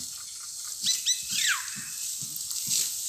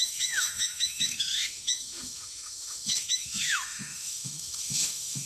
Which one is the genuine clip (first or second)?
first